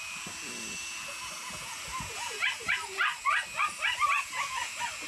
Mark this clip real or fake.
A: fake